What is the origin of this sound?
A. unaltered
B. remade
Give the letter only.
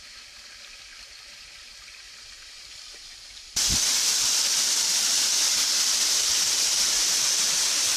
A